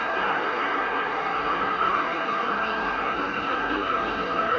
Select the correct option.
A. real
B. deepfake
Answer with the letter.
B